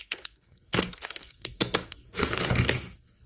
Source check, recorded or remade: remade